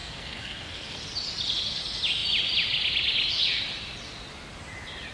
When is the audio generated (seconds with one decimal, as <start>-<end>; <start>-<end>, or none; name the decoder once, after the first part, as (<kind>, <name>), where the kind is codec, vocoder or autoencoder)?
0.0-1.0 (codec, SNAC)